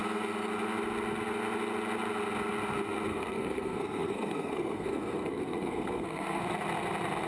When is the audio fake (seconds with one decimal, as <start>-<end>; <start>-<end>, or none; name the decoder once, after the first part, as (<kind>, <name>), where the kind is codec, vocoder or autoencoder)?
3.1-6.4 (codec, SNAC)